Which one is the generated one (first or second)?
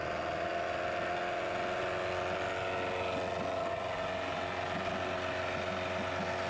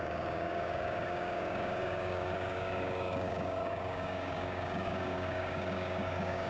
second